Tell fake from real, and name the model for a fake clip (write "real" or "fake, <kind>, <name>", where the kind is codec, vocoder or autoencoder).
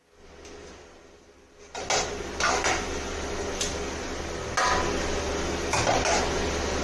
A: real